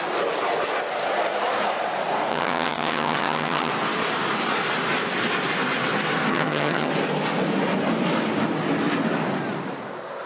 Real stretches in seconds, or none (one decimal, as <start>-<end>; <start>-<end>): 0.0-2.3; 3.7-6.3; 6.9-10.3